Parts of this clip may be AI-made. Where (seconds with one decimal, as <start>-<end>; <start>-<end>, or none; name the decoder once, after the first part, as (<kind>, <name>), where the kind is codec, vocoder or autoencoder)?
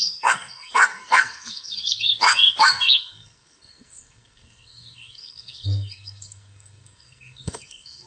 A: 0.0-8.1 (codec, SNAC)